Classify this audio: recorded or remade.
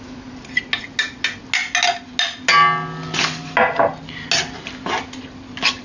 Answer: recorded